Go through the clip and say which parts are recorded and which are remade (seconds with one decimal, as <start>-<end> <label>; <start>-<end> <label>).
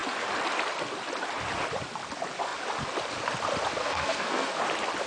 0.0-3.8 recorded; 3.8-4.6 remade; 4.6-5.1 recorded